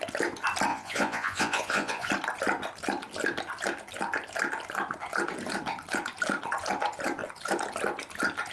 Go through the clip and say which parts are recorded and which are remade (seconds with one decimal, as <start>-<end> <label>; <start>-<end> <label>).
0.0-0.7 recorded; 0.7-2.1 remade; 2.1-8.5 recorded